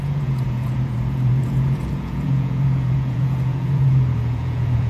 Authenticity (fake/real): fake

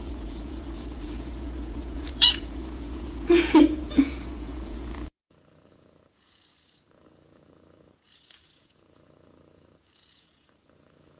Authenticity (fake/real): fake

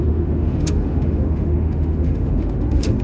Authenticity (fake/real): fake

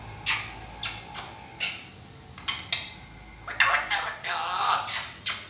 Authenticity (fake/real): real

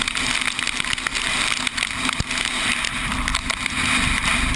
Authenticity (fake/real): real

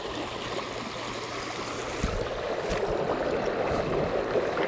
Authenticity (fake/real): real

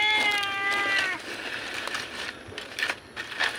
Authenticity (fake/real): real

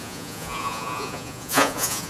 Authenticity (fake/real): fake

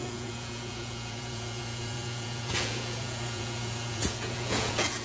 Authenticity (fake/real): fake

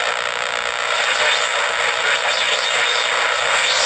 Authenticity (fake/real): real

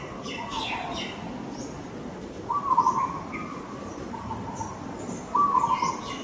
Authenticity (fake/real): real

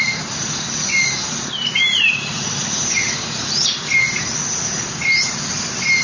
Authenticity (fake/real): real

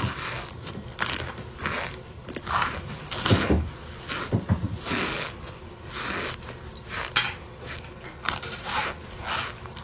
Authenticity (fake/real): real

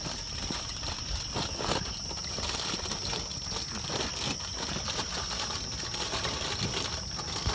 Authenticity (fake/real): real